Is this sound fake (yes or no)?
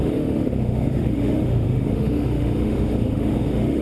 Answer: yes